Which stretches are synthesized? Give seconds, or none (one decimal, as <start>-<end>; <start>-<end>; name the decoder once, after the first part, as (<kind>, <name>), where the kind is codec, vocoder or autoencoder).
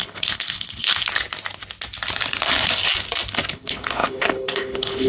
0.0-1.0 (codec, HILCodec); 3.5-5.1